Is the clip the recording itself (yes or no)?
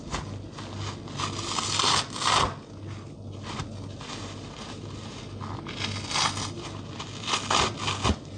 yes